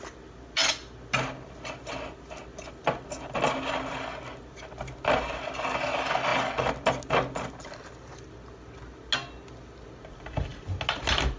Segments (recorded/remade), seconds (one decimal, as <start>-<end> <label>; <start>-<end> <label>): 0.0-11.4 recorded